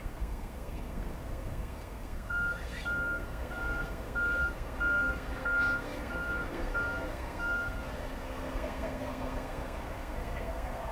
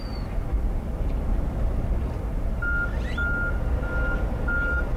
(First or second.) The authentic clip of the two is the second